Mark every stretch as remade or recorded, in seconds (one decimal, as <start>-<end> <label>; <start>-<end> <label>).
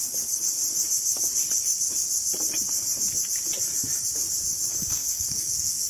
0.0-4.7 recorded; 4.7-5.9 remade